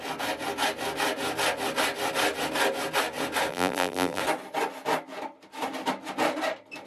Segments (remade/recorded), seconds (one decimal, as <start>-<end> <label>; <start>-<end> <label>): 0.0-3.5 recorded; 3.5-4.2 remade; 4.2-6.9 recorded